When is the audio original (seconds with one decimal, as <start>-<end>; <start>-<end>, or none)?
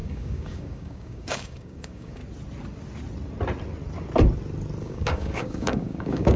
2.2-4.8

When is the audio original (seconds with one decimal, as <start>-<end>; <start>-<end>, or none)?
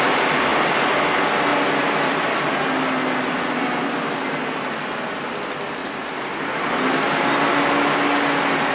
0.0-8.7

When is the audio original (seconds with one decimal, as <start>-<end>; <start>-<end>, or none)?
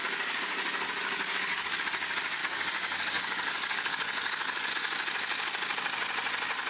1.8-2.4; 4.7-6.7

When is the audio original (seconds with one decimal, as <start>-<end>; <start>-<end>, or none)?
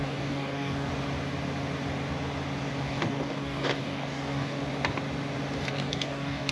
0.9-2.8; 4.6-5.6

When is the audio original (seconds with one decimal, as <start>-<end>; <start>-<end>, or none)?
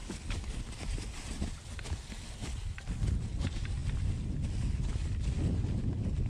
0.6-6.3